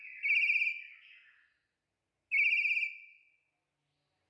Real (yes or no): yes